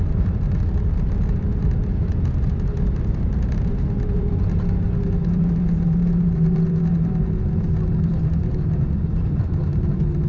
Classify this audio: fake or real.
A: fake